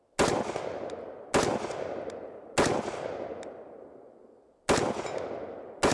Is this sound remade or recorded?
recorded